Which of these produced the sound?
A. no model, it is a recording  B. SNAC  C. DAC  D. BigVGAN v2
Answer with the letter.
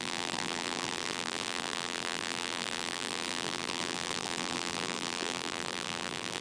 D